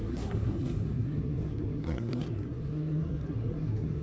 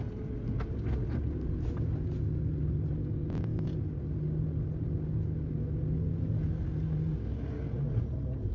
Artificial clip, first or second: first